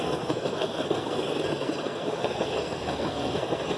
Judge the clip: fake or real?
fake